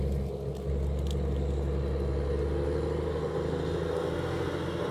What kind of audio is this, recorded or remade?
recorded